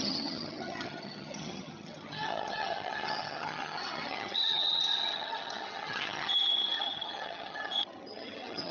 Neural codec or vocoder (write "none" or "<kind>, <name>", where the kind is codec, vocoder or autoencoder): vocoder, HiFi-GAN